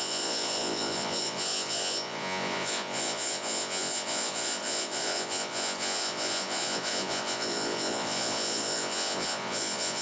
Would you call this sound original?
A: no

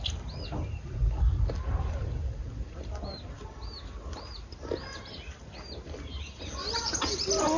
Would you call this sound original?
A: yes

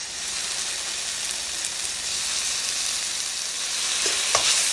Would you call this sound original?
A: yes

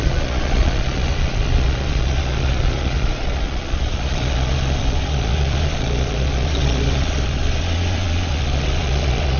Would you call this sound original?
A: no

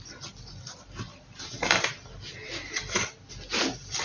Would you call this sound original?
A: yes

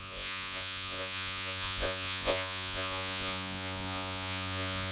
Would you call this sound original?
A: no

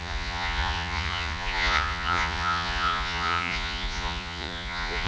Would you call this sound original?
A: no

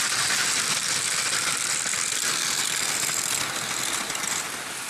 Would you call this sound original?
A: yes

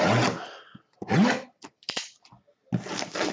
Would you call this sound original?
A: yes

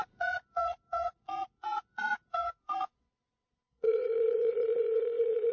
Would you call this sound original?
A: no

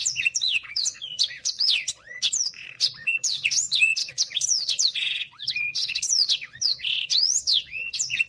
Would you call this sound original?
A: no